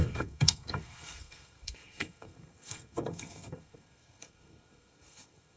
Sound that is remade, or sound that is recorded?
remade